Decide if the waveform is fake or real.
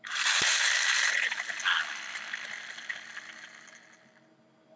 real